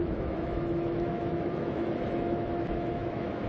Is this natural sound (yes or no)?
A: no